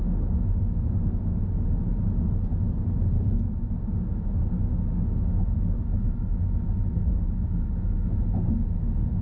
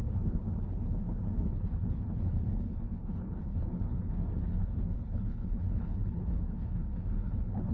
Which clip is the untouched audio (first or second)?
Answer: first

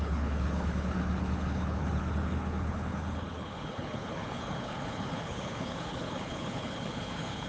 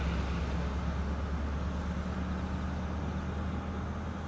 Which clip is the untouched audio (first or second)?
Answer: second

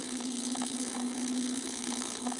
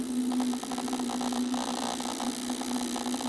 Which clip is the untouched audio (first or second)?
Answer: second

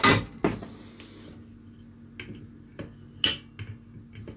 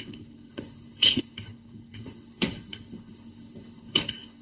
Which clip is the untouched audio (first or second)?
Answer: first